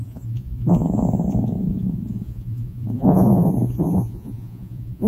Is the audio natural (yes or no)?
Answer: no